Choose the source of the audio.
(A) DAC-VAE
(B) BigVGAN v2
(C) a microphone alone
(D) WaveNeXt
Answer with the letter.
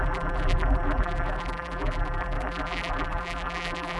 B